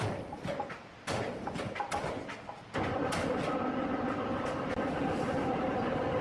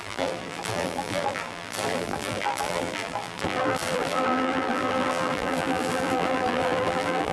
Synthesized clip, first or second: second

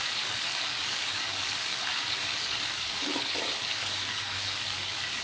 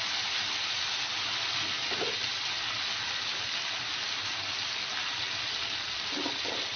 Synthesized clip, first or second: first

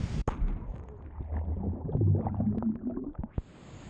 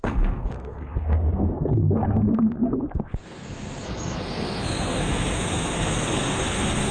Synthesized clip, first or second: second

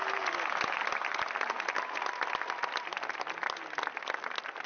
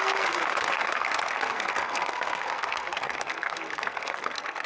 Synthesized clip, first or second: second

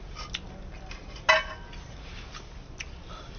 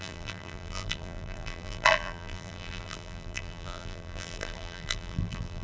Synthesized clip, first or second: second